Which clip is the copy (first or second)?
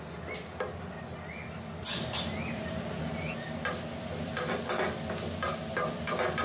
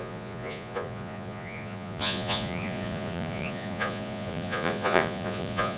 second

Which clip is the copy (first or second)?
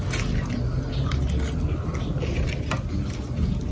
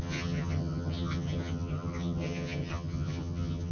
second